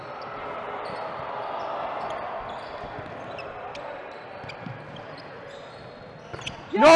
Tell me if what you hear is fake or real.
real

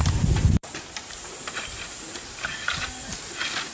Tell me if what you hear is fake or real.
fake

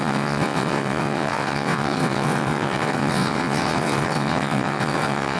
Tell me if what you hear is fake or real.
fake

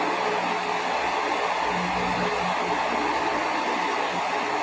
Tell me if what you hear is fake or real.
real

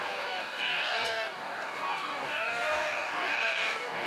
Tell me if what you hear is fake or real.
fake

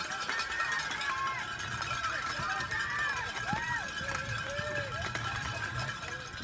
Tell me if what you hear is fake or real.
fake